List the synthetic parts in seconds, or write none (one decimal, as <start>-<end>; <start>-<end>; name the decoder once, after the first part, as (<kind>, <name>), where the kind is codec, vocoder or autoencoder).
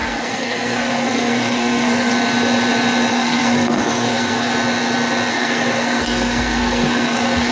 0.0-2.1 (codec, SNAC); 3.1-4.5; 5.3-7.5